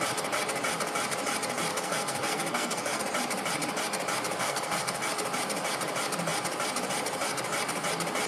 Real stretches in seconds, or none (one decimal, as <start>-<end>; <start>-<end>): 0.0-1.7; 3.0-4.4; 5.0-8.3